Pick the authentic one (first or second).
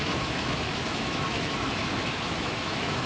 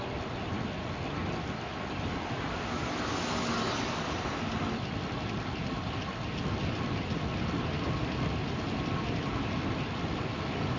second